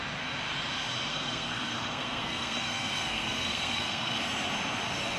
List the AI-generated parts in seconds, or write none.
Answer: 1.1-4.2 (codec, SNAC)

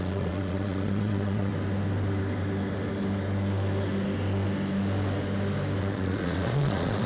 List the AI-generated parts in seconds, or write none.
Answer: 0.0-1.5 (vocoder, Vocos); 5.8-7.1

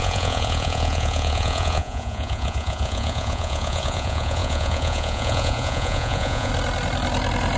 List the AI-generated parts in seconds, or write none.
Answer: 0.0-6.5 (vocoder, Vocos)

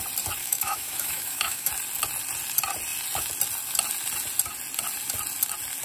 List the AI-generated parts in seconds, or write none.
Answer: 0.4-1.7 (autoencoder, DAC-VAE)

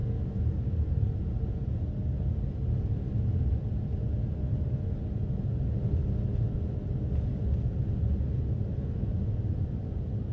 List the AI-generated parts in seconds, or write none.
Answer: none

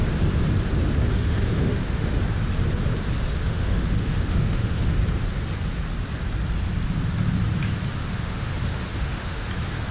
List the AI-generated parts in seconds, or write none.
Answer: 1.1-2.2 (autoencoder, DAC-VAE); 3.4-5.0; 8.0-9.5

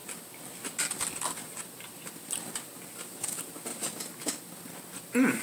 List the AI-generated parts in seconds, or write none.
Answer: none

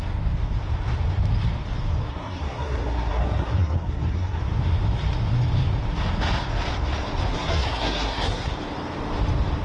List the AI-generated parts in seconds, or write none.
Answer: 2.1-4.4 (codec, SNAC); 7.3-8.5